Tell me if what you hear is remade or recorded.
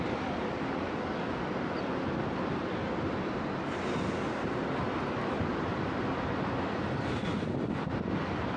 recorded